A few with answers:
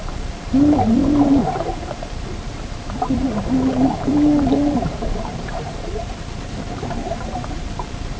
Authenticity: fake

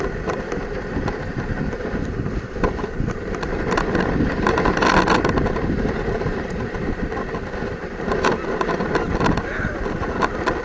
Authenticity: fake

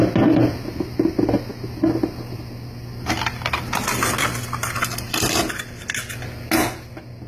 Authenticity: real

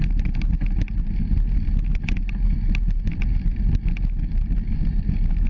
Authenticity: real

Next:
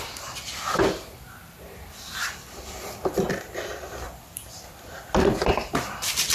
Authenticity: fake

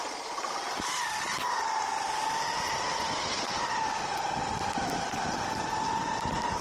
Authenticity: real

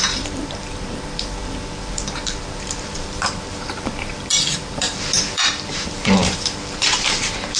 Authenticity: fake